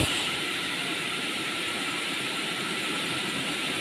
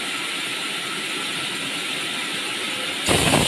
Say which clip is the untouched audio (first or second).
second